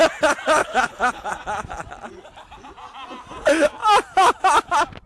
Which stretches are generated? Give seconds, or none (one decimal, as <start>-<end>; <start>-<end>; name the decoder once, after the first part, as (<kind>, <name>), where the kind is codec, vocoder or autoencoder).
0.6-1.3 (codec, HILCodec)

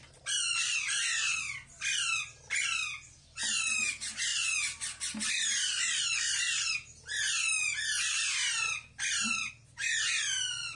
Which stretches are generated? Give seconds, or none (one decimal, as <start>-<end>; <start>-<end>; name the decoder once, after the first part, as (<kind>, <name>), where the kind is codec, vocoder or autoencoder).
none

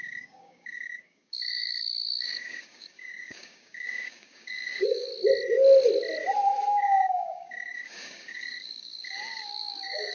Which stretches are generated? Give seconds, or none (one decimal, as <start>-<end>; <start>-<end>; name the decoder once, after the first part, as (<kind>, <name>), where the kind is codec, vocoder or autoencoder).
0.0-5.1 (codec, DAC); 6.8-10.1

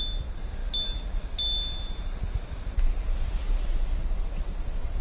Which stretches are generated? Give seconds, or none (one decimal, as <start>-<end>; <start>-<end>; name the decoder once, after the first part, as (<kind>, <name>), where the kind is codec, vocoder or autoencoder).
none

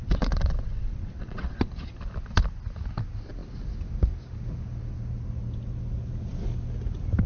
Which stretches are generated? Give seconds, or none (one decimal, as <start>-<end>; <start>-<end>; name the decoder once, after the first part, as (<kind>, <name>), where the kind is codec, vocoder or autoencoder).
0.0-1.7 (vocoder, WaveNeXt)

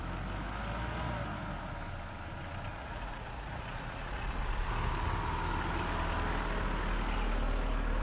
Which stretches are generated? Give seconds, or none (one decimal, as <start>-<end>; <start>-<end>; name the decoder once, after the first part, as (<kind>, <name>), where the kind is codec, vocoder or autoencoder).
2.7-4.7 (vocoder, Vocos)

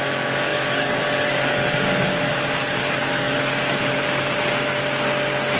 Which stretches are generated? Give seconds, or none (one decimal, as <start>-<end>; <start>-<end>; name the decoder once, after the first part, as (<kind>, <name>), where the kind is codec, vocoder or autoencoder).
0.5-2.3 (codec, DAC); 2.8-3.8

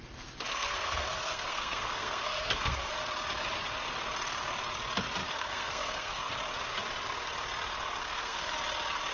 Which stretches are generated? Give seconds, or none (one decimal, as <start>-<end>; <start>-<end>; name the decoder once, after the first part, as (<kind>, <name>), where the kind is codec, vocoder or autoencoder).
0.5-2.9 (codec, SNAC); 5.2-6.3; 8.0-8.5